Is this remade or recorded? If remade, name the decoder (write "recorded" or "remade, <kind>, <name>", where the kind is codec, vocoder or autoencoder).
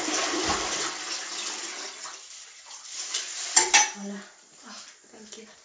recorded